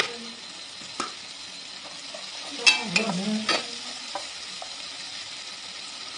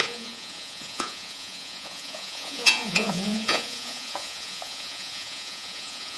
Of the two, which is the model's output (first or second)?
second